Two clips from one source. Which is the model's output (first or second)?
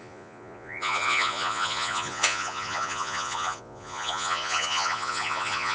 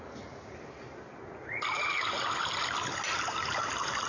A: first